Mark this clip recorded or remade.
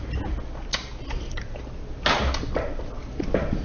recorded